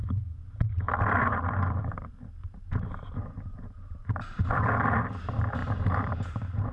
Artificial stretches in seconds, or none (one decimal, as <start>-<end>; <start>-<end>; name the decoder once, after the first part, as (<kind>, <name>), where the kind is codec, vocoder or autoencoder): 0.0-0.8 (vocoder, BigVGAN v2); 2.4-4.5; 5.6-6.7